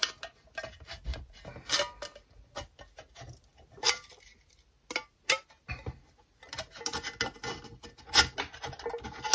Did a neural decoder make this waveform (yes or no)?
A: no